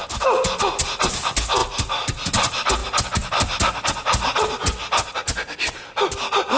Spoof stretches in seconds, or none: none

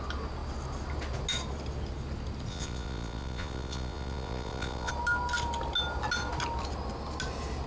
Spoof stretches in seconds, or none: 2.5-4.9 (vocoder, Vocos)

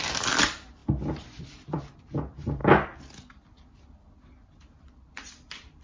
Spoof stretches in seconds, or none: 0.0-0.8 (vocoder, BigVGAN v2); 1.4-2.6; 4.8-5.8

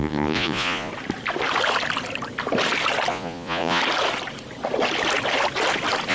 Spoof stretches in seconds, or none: 0.0-0.9 (vocoder, Vocos); 3.1-3.8

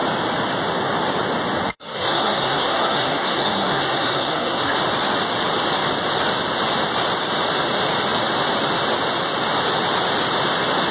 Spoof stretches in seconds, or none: 1.7-4.8 (codec, SNAC)

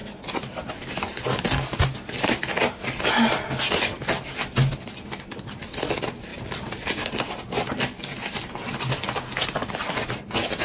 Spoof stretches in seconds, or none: 1.3-1.8 (codec, DAC)

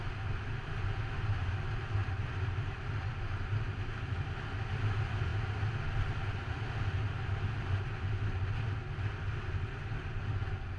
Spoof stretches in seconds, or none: none